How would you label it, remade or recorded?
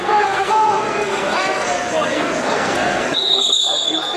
remade